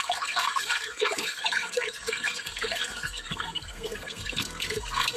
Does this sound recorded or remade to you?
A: remade